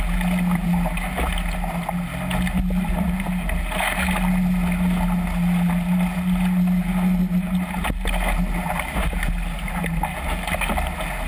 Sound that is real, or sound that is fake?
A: real